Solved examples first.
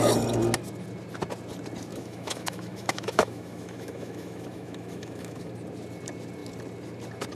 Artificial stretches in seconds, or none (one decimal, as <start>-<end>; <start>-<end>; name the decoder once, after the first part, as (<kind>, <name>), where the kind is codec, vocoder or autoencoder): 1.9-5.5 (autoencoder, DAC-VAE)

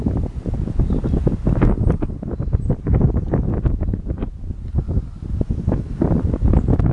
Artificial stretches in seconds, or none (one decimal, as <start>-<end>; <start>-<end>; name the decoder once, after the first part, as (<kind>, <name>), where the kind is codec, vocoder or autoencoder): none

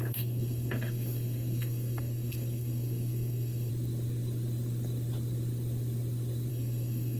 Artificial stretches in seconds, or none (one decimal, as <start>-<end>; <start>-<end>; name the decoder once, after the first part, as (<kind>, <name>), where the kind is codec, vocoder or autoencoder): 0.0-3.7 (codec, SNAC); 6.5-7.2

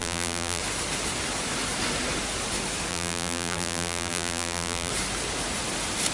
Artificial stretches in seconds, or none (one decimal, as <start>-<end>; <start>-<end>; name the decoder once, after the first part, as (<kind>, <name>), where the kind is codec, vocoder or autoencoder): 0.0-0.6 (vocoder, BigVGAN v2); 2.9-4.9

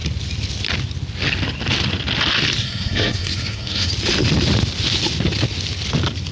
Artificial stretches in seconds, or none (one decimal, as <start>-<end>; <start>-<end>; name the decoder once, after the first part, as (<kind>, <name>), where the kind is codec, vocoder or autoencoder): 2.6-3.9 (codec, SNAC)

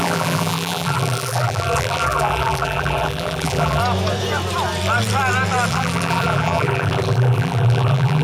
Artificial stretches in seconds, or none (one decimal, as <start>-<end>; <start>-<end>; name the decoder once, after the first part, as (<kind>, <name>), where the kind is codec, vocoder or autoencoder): 0.0-3.8 (vocoder, BigVGAN v2); 5.7-8.2

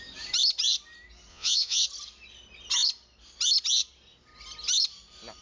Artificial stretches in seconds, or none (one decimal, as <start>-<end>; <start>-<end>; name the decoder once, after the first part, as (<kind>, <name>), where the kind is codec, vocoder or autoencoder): 1.3-1.8 (vocoder, Vocos)